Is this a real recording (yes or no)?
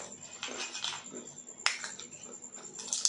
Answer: yes